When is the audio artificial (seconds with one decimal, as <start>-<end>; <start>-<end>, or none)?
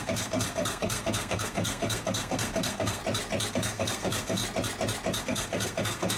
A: 0.0-3.0; 3.5-4.4; 5.2-6.2